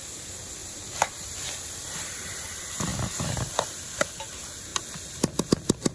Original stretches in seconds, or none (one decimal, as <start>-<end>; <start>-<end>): 0.0-0.6; 2.2-2.9; 3.9-5.9